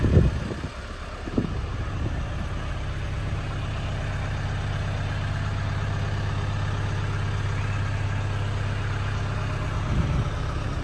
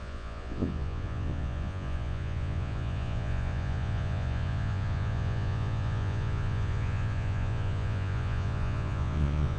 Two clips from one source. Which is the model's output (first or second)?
second